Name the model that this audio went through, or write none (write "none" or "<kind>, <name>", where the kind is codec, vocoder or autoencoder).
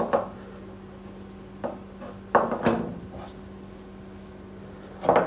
none